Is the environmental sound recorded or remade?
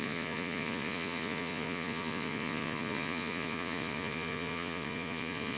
remade